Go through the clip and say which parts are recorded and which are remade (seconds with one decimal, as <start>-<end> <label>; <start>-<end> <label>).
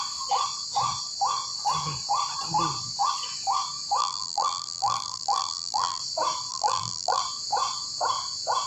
0.0-4.0 recorded; 4.0-6.0 remade; 6.0-6.5 recorded; 6.5-7.2 remade; 7.2-8.7 recorded